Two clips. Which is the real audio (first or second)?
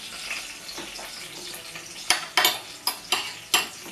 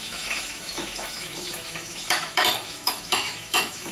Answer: first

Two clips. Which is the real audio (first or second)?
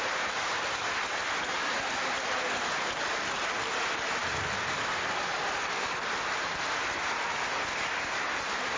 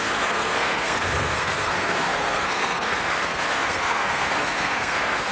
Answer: first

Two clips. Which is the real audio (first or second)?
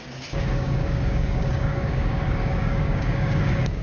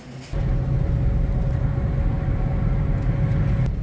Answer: second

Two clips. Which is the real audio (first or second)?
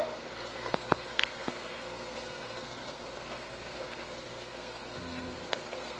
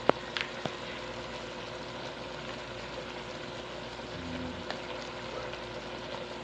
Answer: second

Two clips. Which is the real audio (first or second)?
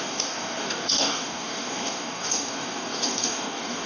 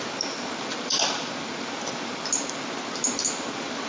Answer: second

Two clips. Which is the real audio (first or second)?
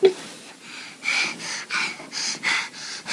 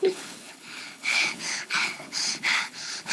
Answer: first